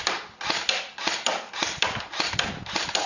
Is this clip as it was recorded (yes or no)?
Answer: no